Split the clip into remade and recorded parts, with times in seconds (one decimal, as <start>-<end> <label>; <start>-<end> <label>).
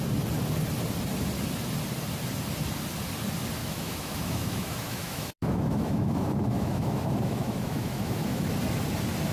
0.0-3.6 recorded; 3.6-8.5 remade; 8.5-9.3 recorded